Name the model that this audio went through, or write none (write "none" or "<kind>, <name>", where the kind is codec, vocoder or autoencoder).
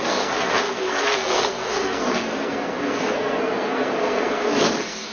codec, SNAC